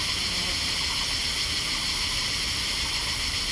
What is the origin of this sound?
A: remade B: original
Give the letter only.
B